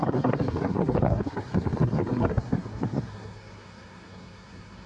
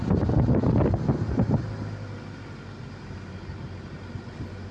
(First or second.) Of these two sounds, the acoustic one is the second